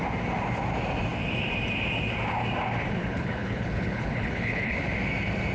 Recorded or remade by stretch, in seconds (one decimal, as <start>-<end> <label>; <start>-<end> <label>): 0.0-3.0 recorded; 3.0-4.8 remade; 4.8-5.5 recorded